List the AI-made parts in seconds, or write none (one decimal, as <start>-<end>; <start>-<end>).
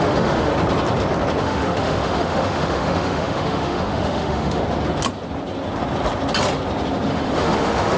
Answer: 0.0-0.5; 1.4-4.6; 7.1-8.0